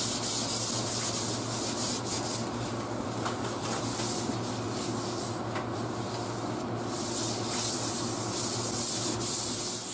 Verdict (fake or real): real